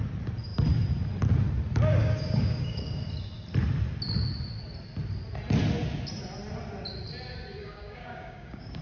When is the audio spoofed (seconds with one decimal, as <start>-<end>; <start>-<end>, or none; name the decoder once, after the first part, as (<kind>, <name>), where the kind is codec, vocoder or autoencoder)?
1.9-3.0 (codec, DAC); 7.6-8.8

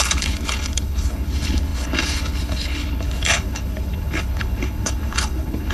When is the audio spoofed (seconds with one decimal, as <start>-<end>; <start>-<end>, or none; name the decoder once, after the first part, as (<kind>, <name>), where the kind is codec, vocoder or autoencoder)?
0.0-5.7 (codec, HILCodec)